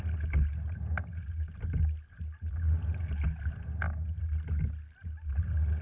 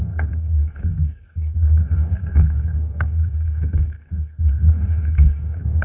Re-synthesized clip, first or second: second